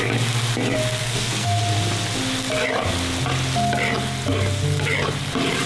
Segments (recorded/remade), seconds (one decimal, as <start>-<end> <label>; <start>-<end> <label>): 0.0-1.0 recorded; 1.0-1.6 remade; 1.6-5.7 recorded